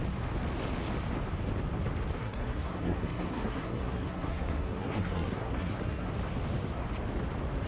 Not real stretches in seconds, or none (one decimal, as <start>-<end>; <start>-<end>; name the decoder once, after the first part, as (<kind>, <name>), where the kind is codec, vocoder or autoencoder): 2.2-6.1 (codec, SNAC)